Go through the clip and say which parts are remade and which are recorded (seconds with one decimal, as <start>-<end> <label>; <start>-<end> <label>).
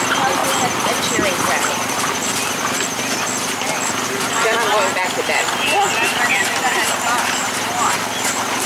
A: 0.0-6.1 recorded; 6.1-8.0 remade; 8.0-8.7 recorded